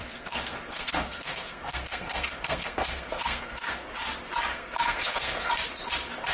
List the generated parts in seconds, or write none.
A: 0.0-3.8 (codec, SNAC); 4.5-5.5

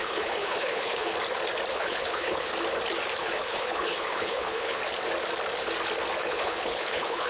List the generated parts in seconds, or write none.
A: 0.0-1.1 (codec, HILCodec); 1.7-2.5; 3.2-4.8; 6.2-7.3

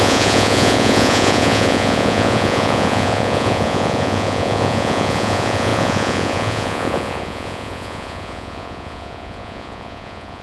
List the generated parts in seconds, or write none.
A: 0.0-10.4 (vocoder, Vocos)

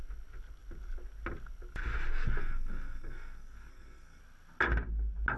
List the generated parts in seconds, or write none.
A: 2.4-4.2 (codec, SNAC)

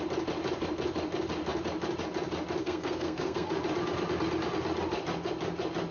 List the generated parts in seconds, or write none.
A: 2.6-3.5 (codec, SNAC)